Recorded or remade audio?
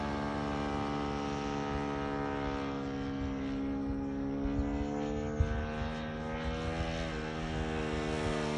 recorded